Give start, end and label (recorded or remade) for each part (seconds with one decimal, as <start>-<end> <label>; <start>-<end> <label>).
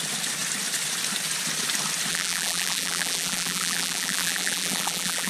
0.0-2.1 recorded; 2.1-5.3 remade